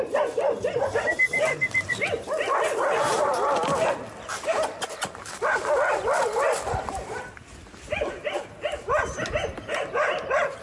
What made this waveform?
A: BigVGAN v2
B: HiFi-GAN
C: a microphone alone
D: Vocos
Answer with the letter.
A